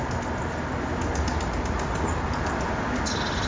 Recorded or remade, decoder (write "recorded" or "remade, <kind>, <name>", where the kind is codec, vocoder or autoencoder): recorded